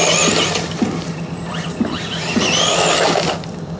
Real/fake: real